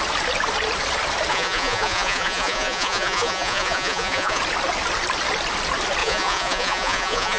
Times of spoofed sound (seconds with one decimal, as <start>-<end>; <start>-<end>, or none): 1.3-4.4; 6.0-7.4

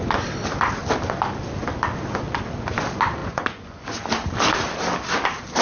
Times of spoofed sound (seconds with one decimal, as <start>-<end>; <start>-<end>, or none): 3.2-4.0

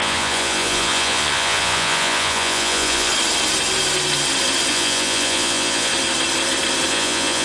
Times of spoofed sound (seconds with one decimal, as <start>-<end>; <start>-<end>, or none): 0.0-3.1; 4.7-5.9; 6.9-7.4